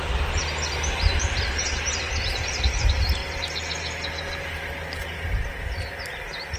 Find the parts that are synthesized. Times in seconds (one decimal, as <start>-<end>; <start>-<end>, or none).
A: 0.0-0.4; 0.9-3.2; 6.0-6.6